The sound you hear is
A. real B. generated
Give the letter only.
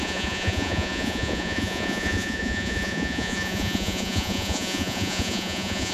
B